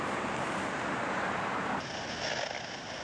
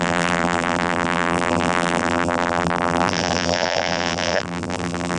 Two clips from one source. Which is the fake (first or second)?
second